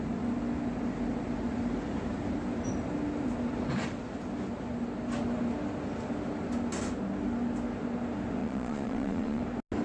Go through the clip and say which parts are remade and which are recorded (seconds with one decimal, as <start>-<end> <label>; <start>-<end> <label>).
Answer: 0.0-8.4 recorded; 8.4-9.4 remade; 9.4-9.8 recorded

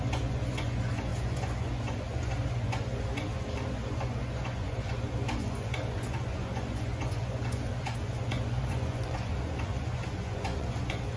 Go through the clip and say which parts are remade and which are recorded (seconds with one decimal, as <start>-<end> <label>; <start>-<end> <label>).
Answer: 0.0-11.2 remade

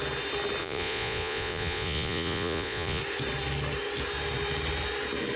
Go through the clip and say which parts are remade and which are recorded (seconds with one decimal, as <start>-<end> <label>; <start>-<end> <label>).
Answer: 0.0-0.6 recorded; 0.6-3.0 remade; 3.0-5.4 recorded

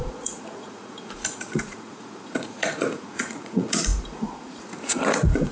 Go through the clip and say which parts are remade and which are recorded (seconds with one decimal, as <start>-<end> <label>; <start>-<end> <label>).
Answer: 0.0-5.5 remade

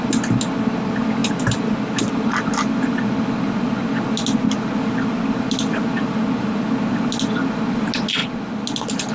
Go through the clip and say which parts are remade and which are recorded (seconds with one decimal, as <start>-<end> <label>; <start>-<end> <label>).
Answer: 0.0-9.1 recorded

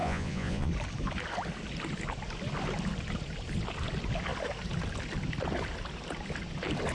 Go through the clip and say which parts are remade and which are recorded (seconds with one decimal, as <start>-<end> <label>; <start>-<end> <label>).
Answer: 0.0-0.7 remade; 0.7-6.9 recorded

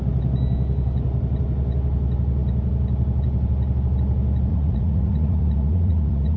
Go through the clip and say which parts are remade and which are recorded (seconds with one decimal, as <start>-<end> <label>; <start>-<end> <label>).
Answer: 0.0-4.5 recorded; 4.5-6.4 remade